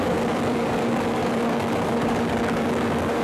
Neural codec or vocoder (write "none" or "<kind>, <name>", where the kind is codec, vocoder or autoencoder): codec, DAC